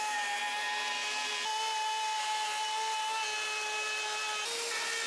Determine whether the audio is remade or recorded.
recorded